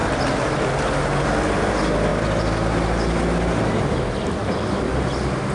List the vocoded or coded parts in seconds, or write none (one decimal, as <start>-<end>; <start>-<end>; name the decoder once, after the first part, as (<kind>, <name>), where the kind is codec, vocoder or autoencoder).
none